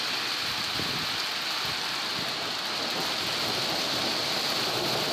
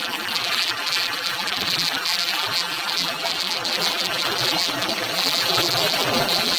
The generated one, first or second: second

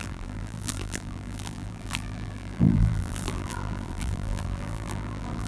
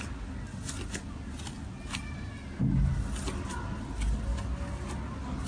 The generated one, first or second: first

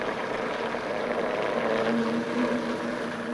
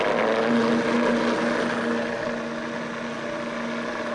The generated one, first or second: first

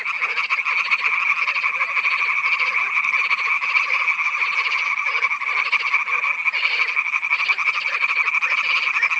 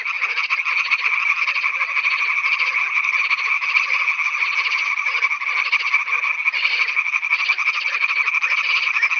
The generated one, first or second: second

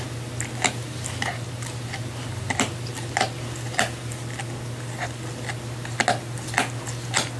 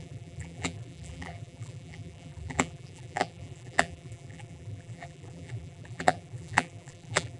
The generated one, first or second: second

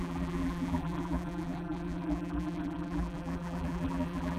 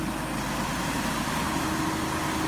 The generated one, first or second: first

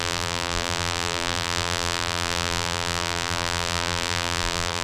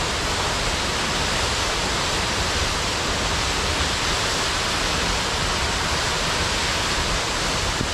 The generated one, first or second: first